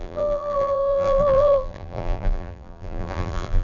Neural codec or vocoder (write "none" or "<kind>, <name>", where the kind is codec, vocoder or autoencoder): vocoder, BigVGAN v2